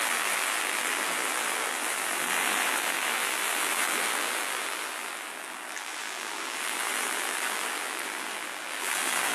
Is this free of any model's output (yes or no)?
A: no